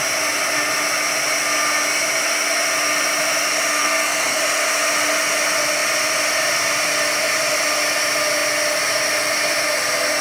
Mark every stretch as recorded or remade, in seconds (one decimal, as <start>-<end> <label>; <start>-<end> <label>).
0.0-3.8 recorded; 3.8-4.4 remade; 4.4-10.2 recorded